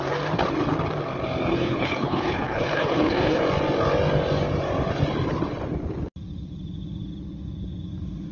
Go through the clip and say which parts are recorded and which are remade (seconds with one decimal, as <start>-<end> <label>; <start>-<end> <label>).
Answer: 0.0-1.5 recorded; 1.5-3.4 remade; 3.4-8.3 recorded